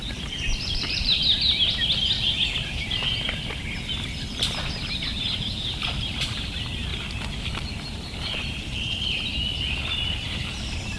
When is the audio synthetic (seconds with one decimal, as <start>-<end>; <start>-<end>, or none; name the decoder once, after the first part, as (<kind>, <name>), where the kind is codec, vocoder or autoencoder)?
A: 0.0-1.2 (vocoder, BigVGAN v2); 5.2-6.9; 7.5-9.3; 10.1-11.0